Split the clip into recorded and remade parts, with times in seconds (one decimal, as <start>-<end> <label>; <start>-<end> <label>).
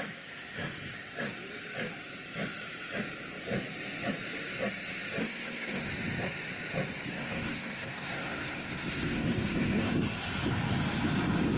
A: 0.0-5.2 recorded; 5.2-5.9 remade; 5.9-7.1 recorded; 7.1-9.9 remade; 9.9-11.6 recorded